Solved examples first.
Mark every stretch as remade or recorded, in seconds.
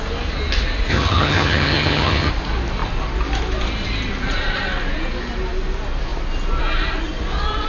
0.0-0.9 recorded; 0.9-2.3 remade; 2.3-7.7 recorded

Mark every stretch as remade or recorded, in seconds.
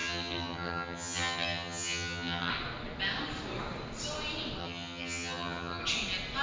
0.0-2.5 remade; 2.5-4.6 recorded; 4.6-5.8 remade; 5.8-6.4 recorded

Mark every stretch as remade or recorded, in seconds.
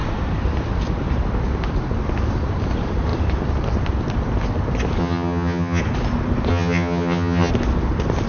0.0-5.0 recorded; 5.0-5.8 remade; 5.8-6.5 recorded; 6.5-7.5 remade; 7.5-8.3 recorded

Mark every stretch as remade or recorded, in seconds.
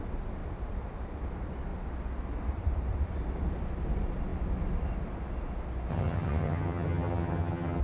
0.0-5.9 recorded; 5.9-7.8 remade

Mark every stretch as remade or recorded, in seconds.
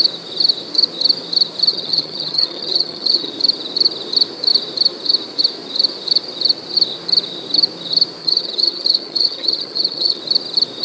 0.0-1.7 recorded; 1.7-3.3 remade; 3.3-8.2 recorded; 8.2-10.2 remade; 10.2-10.8 recorded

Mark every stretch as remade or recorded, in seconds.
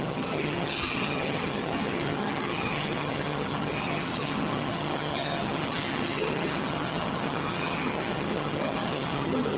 0.0-9.6 remade